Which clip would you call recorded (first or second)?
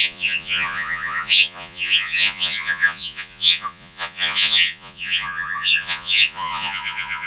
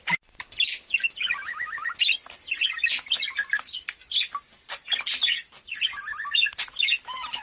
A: second